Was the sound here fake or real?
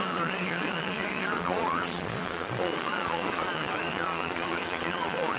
fake